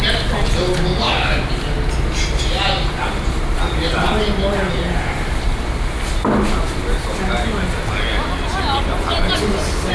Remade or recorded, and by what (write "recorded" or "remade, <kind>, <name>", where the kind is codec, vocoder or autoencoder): recorded